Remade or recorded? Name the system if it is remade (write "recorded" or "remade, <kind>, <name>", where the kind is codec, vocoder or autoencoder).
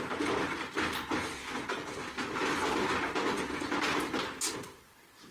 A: recorded